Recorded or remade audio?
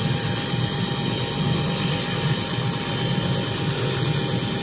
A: recorded